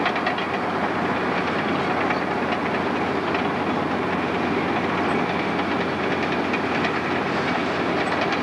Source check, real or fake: real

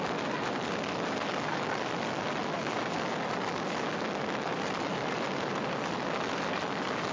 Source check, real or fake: real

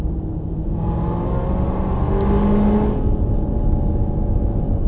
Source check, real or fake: real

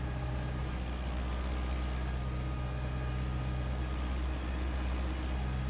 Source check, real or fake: real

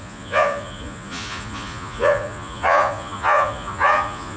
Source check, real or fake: fake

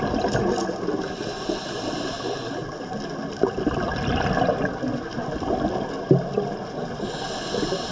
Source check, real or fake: real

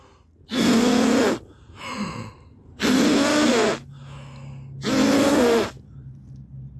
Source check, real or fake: real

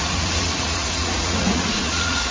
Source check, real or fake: fake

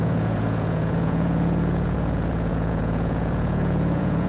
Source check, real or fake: fake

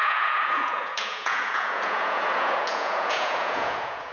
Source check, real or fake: fake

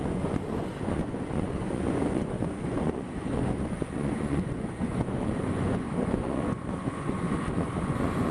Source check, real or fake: fake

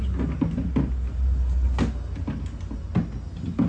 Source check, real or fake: real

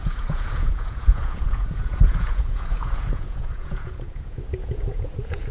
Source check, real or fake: fake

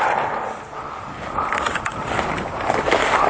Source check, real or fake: real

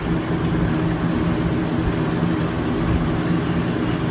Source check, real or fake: real